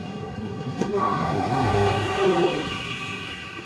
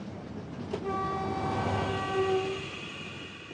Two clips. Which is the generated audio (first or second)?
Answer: first